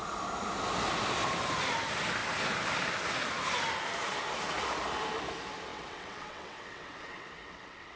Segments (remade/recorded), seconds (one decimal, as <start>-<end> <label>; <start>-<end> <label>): 0.0-5.7 recorded; 5.7-8.0 remade